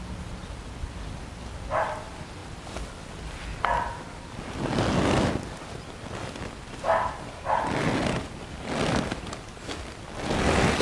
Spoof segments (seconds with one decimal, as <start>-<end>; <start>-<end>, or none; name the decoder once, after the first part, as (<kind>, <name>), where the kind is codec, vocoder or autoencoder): none